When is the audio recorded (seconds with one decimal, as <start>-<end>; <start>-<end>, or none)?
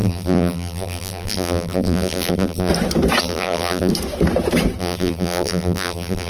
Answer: 2.7-3.2; 3.9-4.8